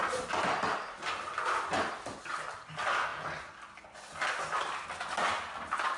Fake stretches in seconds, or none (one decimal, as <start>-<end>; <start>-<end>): none